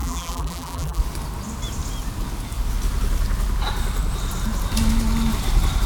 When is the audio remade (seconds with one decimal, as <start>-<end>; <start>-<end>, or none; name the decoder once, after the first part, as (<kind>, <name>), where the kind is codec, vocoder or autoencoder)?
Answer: 0.0-1.0 (vocoder, BigVGAN v2)